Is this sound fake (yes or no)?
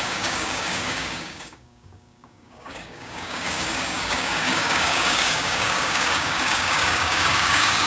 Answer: yes